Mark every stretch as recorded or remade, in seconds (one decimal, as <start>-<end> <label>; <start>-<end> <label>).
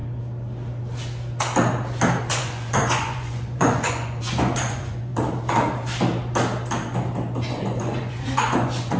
0.0-2.2 recorded; 2.2-5.1 remade; 5.1-7.4 recorded; 7.4-9.0 remade